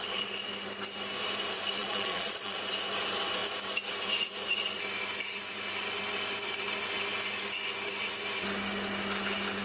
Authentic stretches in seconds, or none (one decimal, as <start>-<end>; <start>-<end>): 0.0-1.8; 2.6-9.6